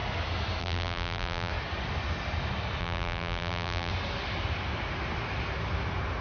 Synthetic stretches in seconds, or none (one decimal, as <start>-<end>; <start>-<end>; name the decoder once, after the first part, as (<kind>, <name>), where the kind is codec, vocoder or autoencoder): 0.6-1.5 (vocoder, BigVGAN v2); 2.8-3.9